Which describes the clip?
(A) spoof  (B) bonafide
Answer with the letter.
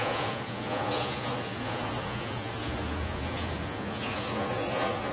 A